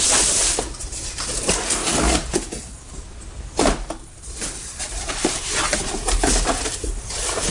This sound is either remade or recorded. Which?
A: recorded